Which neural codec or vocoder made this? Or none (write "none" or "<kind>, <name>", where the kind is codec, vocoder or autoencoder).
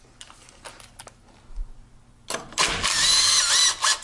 none